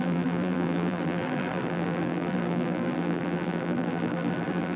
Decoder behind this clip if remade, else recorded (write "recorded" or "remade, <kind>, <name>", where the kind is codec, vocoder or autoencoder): remade, vocoder, BigVGAN v2